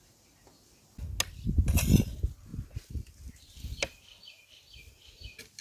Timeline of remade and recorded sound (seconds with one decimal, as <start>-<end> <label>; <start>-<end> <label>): 0.0-5.6 recorded